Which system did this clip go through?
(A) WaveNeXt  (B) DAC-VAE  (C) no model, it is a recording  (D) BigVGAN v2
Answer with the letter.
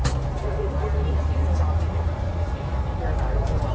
C